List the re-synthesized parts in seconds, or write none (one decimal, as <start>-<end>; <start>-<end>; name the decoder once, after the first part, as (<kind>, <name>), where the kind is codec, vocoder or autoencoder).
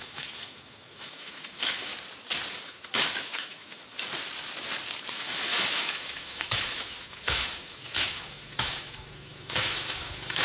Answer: 0.0-1.9 (autoencoder, DAC-VAE); 2.6-3.8; 5.1-10.4